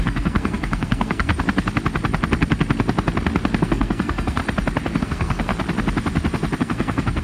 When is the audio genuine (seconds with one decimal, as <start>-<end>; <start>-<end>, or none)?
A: 1.3-3.6; 4.4-5.0; 5.5-6.6